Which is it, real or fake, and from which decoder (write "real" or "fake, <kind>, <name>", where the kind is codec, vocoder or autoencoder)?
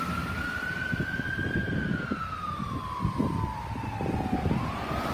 real